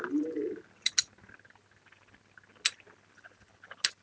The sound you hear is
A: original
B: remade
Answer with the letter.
A